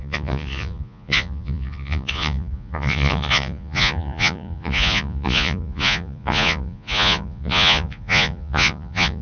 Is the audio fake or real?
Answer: fake